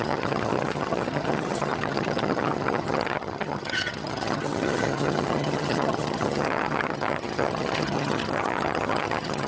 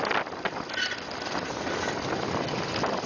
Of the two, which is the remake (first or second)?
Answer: first